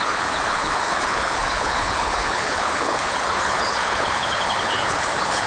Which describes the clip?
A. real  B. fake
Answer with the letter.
B